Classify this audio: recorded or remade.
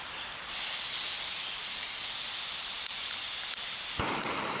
remade